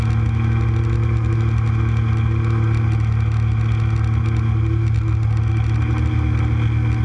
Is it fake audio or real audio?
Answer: real